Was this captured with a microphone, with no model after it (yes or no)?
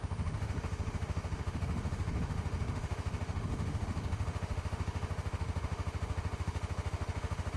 no